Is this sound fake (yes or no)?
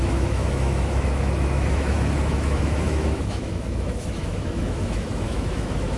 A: yes